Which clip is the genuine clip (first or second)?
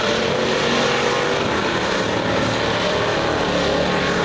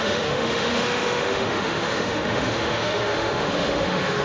first